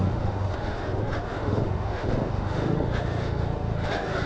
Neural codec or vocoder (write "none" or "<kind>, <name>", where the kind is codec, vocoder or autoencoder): autoencoder, DAC-VAE